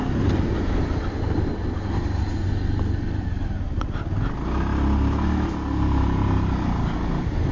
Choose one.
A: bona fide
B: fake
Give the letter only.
A